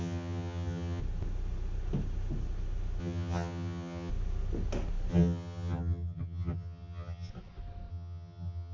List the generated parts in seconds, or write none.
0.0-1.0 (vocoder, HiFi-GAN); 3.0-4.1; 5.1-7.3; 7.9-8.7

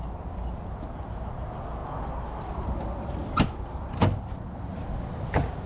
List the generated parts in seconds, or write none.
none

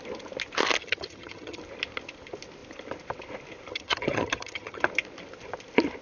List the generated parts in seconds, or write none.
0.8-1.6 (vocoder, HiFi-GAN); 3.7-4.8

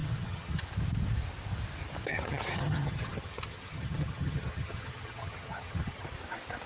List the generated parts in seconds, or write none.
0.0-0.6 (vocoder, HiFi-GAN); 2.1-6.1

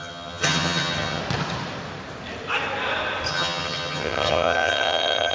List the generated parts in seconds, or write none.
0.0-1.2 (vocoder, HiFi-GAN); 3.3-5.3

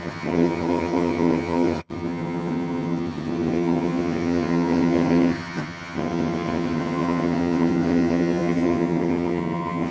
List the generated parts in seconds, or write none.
0.0-9.9 (vocoder, HiFi-GAN)

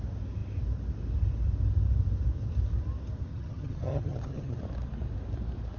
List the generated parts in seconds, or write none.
3.3-4.6 (vocoder, HiFi-GAN)

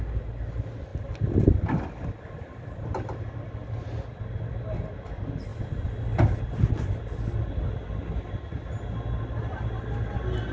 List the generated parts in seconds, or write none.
none